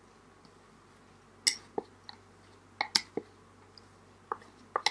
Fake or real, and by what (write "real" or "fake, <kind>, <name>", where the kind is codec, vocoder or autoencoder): real